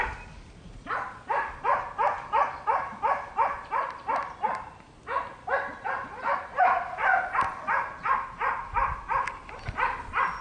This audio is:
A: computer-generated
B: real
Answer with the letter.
B